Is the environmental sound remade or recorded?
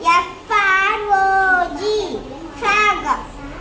recorded